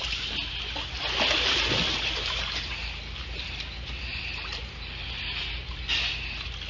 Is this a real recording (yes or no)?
yes